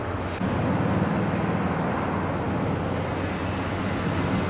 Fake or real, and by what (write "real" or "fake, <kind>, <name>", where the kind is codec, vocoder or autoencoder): real